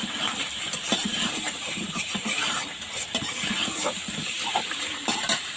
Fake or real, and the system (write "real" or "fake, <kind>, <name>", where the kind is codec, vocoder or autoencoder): fake, vocoder, BigVGAN v2